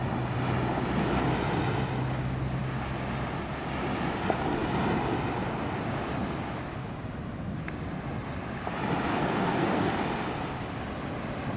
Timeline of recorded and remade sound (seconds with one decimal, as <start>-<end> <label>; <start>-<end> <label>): 0.0-9.1 recorded; 9.1-10.0 remade; 10.0-11.6 recorded